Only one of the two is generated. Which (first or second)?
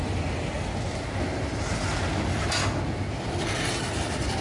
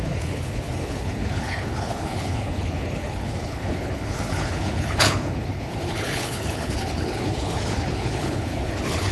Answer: second